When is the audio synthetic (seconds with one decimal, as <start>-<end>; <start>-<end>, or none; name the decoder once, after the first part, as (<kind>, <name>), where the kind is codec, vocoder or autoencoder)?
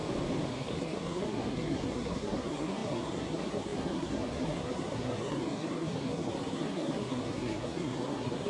0.5-8.5 (codec, SNAC)